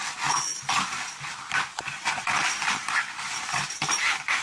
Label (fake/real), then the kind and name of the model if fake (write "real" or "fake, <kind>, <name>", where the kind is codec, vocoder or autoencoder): fake, vocoder, BigVGAN v2